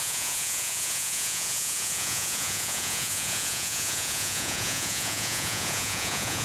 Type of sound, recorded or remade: remade